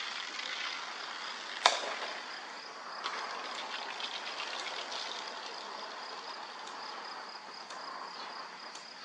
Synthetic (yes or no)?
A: no